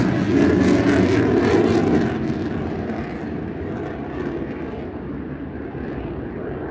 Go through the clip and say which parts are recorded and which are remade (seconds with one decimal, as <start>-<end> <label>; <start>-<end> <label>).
0.0-6.7 recorded